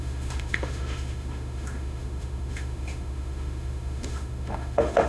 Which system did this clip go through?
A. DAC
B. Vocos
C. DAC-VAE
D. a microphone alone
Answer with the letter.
C